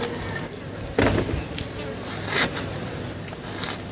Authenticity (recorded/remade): recorded